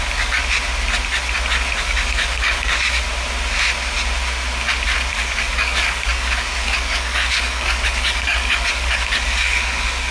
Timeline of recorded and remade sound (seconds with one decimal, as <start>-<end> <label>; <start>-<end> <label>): 0.0-0.4 remade; 0.4-1.8 recorded; 1.8-3.1 remade; 3.1-5.1 recorded; 5.1-10.1 remade